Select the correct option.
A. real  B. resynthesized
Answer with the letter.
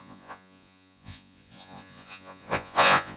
B